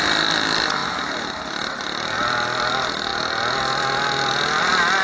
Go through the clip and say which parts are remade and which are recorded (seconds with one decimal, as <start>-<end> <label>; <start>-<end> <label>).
0.0-0.8 recorded; 0.8-1.4 remade; 1.4-5.0 recorded